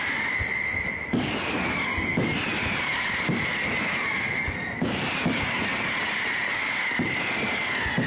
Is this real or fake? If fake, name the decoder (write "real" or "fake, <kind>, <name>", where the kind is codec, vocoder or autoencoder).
real